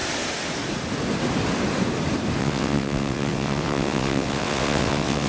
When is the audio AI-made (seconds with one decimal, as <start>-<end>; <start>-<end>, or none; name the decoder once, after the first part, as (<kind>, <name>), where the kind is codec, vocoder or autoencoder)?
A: 2.4-5.3 (vocoder, WaveNeXt)